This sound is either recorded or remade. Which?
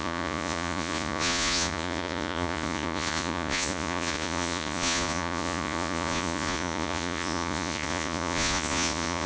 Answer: remade